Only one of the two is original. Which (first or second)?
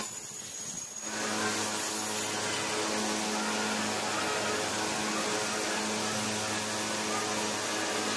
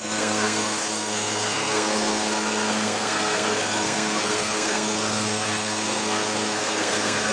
first